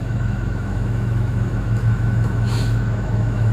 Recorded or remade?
remade